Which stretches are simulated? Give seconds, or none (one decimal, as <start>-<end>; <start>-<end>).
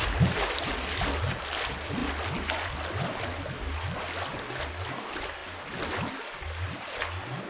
none